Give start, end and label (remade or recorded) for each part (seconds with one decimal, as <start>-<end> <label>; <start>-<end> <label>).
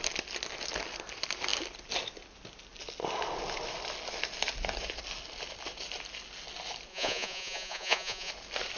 0.0-6.9 recorded; 6.9-8.3 remade; 8.3-8.8 recorded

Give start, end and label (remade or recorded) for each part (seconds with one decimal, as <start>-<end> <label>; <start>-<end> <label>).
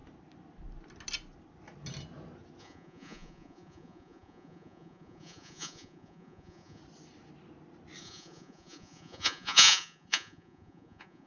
0.0-2.6 recorded; 2.6-6.8 remade; 6.8-8.0 recorded; 8.0-11.3 remade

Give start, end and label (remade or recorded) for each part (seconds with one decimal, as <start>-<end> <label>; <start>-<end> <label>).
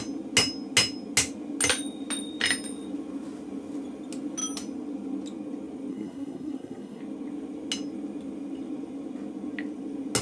0.0-5.9 recorded; 5.9-7.0 remade; 7.0-10.2 recorded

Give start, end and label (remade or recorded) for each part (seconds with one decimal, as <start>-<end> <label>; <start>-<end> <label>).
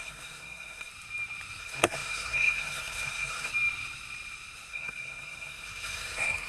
0.0-0.9 remade; 0.9-1.6 recorded; 1.6-3.5 remade; 3.5-4.7 recorded; 4.7-6.5 remade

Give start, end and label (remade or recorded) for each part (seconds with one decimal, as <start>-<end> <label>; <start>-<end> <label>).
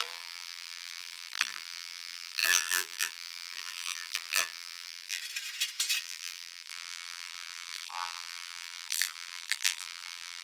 0.0-5.2 remade; 5.2-6.0 recorded; 6.0-10.4 remade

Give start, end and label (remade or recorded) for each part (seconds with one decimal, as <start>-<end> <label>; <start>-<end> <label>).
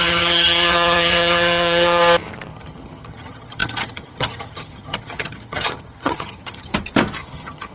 0.0-2.0 remade; 2.0-2.5 recorded; 2.5-6.7 remade; 6.7-7.2 recorded; 7.2-7.7 remade